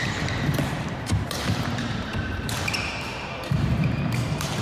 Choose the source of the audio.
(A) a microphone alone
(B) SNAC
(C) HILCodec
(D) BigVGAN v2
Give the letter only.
D